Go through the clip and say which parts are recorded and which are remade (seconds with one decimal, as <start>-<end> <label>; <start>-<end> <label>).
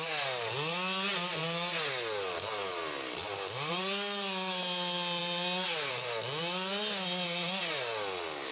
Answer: 0.0-8.5 recorded